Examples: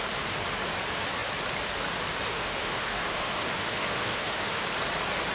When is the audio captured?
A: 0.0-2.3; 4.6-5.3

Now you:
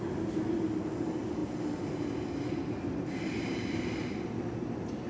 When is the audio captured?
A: 0.0-5.1

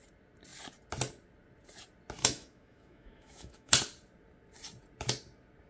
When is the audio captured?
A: 0.0-2.2; 3.7-5.7

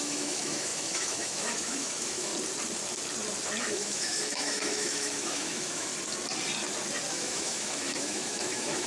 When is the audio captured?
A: 2.3-3.6; 5.9-7.1